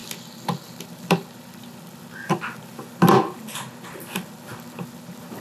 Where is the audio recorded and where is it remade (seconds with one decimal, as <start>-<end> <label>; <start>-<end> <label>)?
0.0-5.4 recorded